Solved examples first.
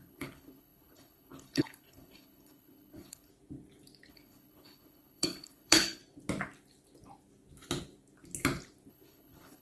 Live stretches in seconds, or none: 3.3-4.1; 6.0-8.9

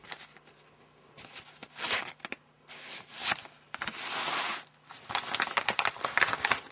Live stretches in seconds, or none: 0.0-6.7

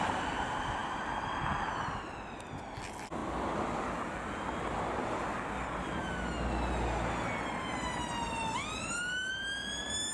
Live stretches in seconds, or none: 0.0-10.1

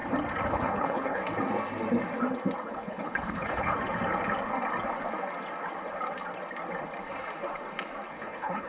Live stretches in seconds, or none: 0.0-0.5; 1.2-2.7; 3.7-8.1

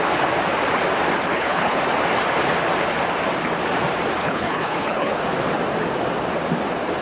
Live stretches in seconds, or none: 0.0-1.3; 1.8-4.2; 5.1-7.0

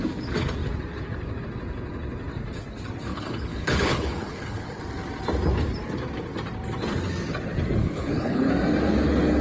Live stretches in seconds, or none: 0.0-3.1; 4.8-7.8; 8.5-9.4

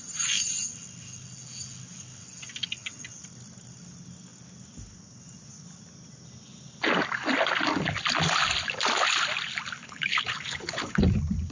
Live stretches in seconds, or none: 0.0-9.8; 11.0-11.5